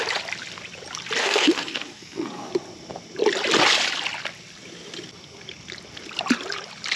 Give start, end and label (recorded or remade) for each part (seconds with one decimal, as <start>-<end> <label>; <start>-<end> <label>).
0.0-1.2 recorded; 1.2-2.5 remade; 2.5-7.0 recorded